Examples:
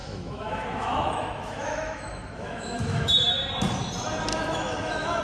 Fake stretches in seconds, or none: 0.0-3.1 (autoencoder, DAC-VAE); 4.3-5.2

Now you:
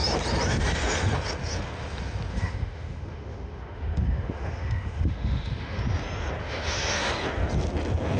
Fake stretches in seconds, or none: 2.3-5.8 (autoencoder, DAC-VAE); 6.4-7.1

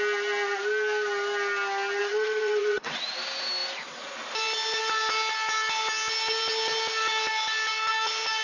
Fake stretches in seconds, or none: 2.0-3.0 (vocoder, WaveNeXt)

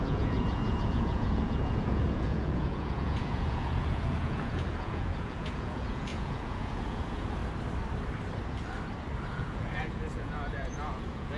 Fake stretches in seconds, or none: 0.0-7.4 (vocoder, Vocos); 9.3-11.4

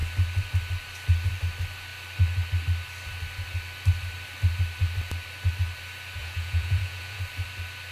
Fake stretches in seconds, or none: 6.2-7.2 (vocoder, Vocos)

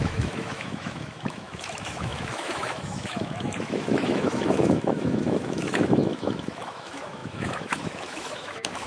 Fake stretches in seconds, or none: 0.0-8.9 (autoencoder, DAC-VAE)

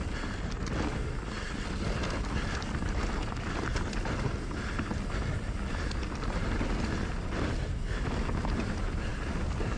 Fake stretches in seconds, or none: none